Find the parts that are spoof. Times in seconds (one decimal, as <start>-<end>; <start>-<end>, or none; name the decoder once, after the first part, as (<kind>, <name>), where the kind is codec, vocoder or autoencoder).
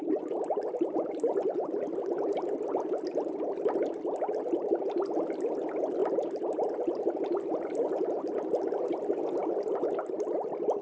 none